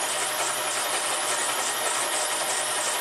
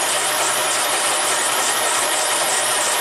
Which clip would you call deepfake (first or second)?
second